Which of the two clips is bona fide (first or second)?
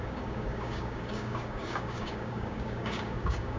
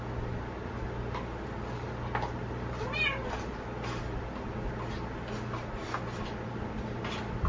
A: second